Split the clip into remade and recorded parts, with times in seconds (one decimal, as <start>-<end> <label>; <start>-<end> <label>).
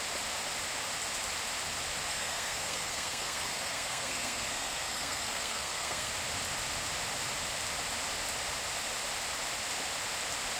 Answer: 0.0-2.1 recorded; 2.1-6.1 remade; 6.1-10.6 recorded